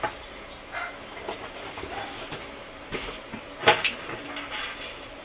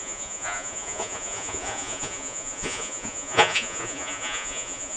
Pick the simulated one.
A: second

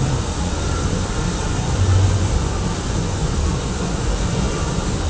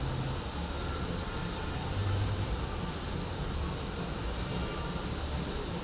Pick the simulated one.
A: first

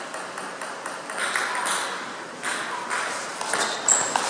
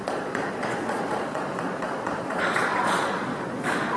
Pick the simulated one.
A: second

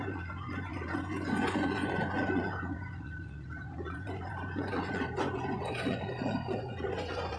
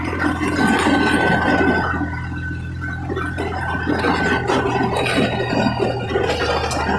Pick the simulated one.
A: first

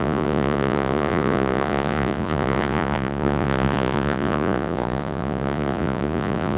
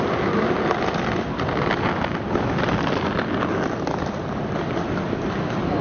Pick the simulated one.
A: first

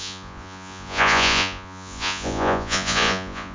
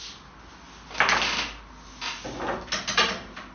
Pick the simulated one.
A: first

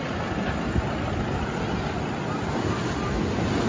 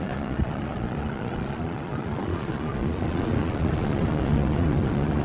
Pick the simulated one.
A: second